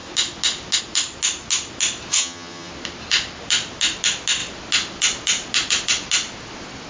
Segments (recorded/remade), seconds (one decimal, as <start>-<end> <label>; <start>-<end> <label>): 0.0-2.1 recorded; 2.1-2.7 remade; 2.7-6.9 recorded